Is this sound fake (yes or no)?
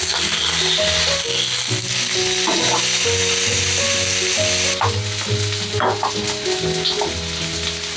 no